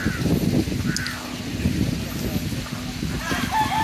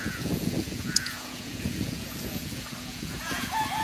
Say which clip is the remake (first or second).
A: second